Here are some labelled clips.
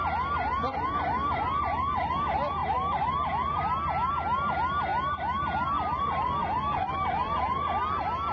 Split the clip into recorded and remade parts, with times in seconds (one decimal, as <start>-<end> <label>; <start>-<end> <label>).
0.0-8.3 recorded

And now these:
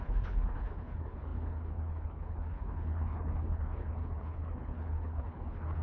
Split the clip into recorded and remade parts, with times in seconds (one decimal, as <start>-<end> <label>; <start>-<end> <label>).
0.0-5.8 remade

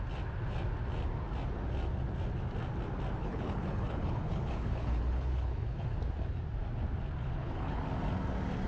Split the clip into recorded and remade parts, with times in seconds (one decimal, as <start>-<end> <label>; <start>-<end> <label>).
0.0-3.2 recorded; 3.2-6.0 remade; 6.0-7.2 recorded; 7.2-7.8 remade; 7.8-8.7 recorded

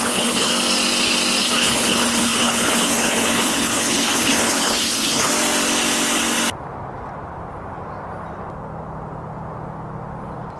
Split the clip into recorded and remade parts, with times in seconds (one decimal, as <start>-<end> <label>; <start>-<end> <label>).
0.0-0.5 remade; 0.5-1.4 recorded; 1.4-5.3 remade; 5.3-10.6 recorded

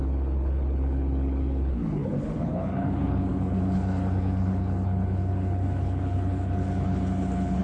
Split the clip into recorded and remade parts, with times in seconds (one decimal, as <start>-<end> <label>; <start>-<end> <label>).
0.0-7.6 remade